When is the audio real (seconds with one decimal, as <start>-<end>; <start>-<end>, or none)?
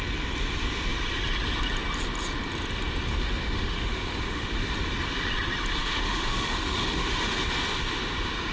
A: 0.0-3.1; 4.7-5.7; 7.4-8.5